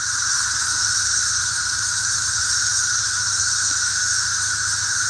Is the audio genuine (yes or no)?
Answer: no